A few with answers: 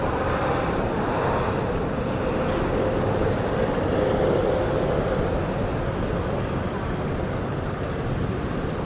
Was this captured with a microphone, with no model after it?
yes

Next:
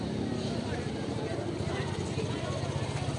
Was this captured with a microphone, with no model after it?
yes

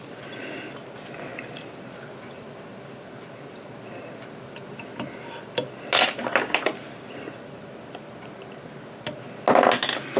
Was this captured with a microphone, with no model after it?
yes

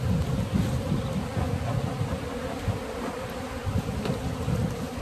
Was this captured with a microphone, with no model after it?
yes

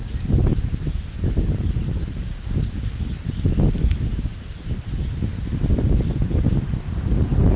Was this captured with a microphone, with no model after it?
yes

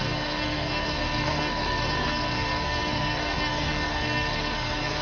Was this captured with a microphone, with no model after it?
no